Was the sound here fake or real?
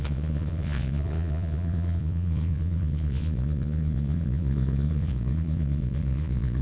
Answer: fake